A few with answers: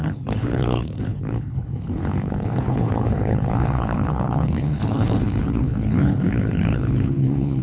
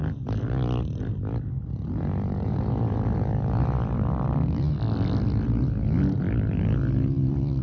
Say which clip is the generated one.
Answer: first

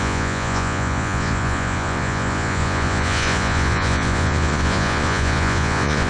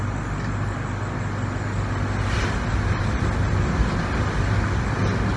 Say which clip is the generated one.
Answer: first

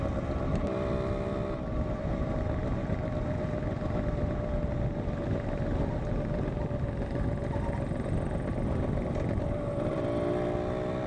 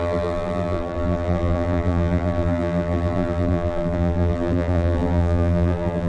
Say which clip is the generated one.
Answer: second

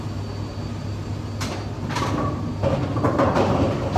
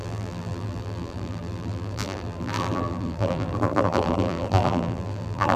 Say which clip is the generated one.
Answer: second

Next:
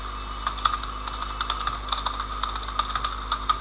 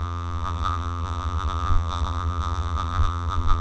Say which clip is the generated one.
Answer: second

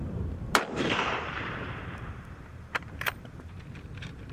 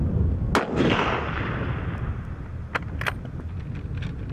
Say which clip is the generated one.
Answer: first